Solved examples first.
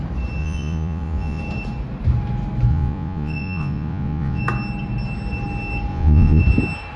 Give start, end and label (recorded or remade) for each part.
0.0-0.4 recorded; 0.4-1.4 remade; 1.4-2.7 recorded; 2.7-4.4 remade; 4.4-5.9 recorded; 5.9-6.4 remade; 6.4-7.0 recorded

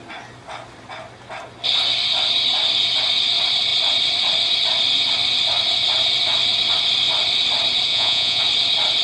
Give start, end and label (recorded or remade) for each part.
0.0-7.9 recorded; 7.9-8.4 remade; 8.4-9.0 recorded

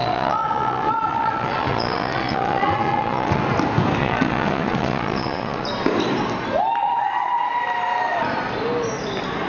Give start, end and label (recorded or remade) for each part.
0.0-3.4 remade; 3.4-4.0 recorded; 4.0-5.7 remade; 5.7-6.8 recorded; 6.8-7.4 remade; 7.4-9.5 recorded

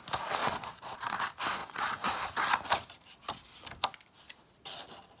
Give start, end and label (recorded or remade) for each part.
0.0-0.4 recorded; 0.4-1.2 remade; 1.2-1.6 recorded; 1.6-2.1 remade; 2.1-5.2 recorded

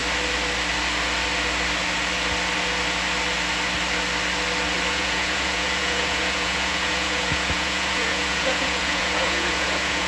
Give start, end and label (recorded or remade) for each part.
0.0-4.9 recorded; 4.9-10.1 remade

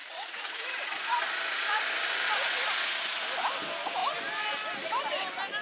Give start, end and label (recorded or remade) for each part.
0.0-1.2 remade; 1.2-5.6 recorded

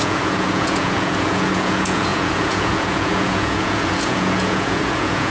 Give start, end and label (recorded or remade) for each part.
0.0-5.3 remade

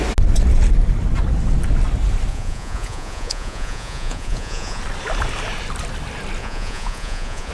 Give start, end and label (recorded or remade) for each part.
0.0-2.3 recorded; 2.3-4.8 remade; 4.8-6.4 recorded; 6.4-7.5 remade